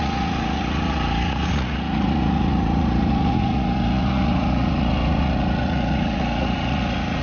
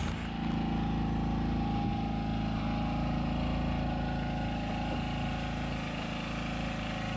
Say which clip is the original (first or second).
second